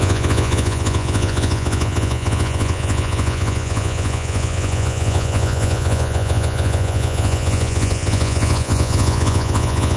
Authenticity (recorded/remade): remade